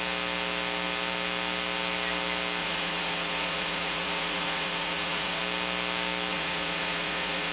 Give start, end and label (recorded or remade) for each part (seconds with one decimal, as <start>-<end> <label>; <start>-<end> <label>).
0.0-2.6 recorded; 2.6-5.4 remade; 5.4-6.3 recorded; 6.3-7.5 remade